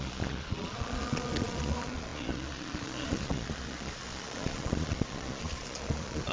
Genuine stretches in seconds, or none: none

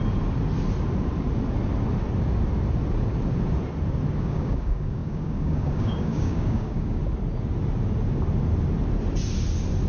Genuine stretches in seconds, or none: 0.0-4.2; 7.0-9.9

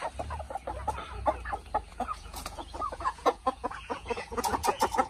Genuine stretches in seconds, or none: 0.0-1.9